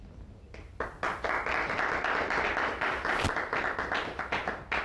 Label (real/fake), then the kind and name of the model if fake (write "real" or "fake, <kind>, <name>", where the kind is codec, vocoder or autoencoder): real